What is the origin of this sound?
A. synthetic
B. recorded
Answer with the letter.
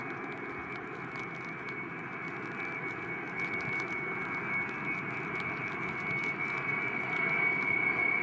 B